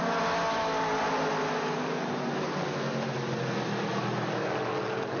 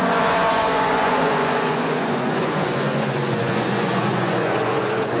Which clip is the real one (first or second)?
first